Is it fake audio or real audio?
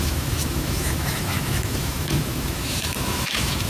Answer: fake